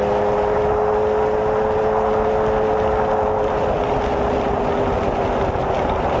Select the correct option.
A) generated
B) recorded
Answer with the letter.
B